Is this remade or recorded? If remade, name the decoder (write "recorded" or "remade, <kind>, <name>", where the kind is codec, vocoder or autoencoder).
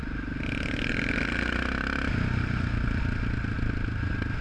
recorded